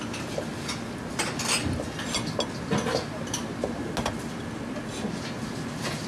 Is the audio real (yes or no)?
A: yes